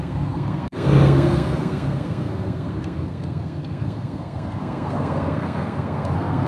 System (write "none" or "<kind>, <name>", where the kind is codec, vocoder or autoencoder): codec, SNAC